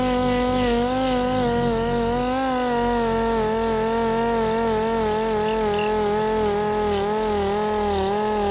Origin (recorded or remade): recorded